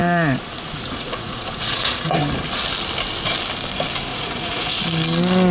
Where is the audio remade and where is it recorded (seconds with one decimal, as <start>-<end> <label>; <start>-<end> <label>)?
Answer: 0.0-2.2 remade; 2.2-4.1 recorded; 4.1-4.8 remade; 4.8-5.5 recorded